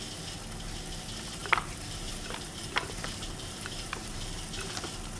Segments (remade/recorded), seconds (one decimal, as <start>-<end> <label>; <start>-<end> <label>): 0.0-1.4 recorded; 1.4-4.5 remade; 4.5-5.2 recorded